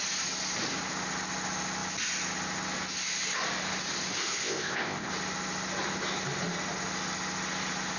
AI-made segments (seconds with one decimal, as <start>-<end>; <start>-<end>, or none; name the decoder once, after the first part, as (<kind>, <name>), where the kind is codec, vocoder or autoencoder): 4.2-5.1 (codec, ZipCodec)